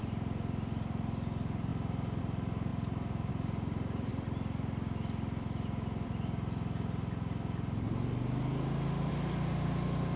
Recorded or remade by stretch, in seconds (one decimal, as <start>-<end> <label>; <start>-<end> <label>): 0.0-1.7 remade; 1.7-2.2 recorded; 2.2-4.1 remade; 4.1-9.1 recorded; 9.1-10.2 remade